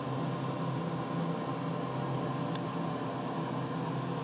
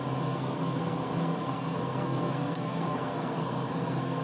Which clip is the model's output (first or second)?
second